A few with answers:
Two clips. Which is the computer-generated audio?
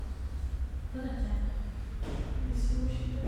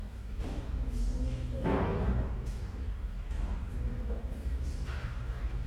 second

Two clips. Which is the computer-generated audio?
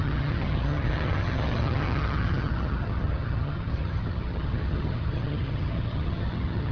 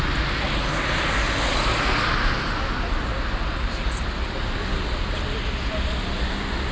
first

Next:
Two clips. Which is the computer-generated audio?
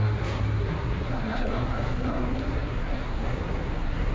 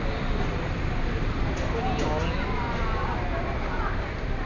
first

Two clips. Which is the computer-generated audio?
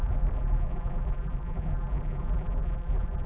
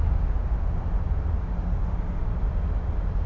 first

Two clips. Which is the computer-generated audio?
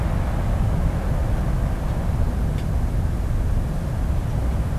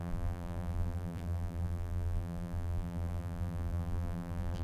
second